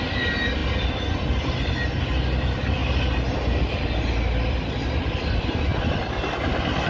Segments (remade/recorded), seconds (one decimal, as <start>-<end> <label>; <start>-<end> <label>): 0.0-6.9 recorded